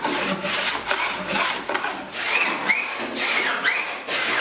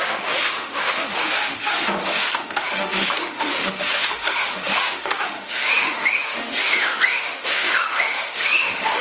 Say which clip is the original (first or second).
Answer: first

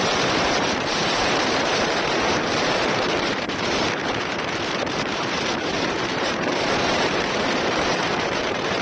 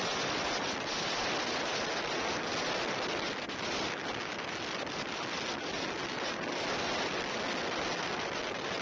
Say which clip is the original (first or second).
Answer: second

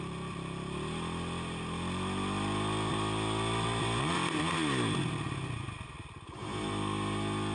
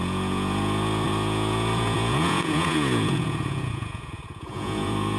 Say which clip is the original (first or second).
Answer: first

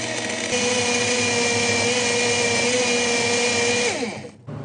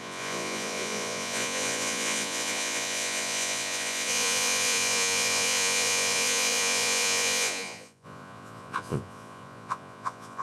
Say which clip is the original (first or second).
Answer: first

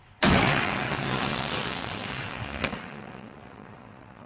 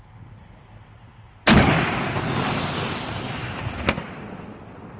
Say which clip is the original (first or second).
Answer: second